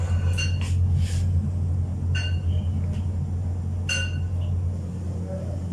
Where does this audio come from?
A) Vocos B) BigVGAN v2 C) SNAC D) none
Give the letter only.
D